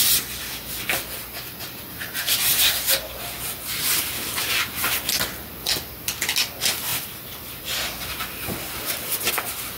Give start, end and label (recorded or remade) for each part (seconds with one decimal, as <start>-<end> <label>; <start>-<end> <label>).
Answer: 0.0-1.2 recorded; 1.2-2.2 remade; 2.2-6.9 recorded; 6.9-9.3 remade; 9.3-9.8 recorded